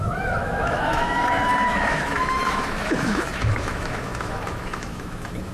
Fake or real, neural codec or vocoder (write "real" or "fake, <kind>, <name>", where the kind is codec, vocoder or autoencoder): fake, autoencoder, DAC-VAE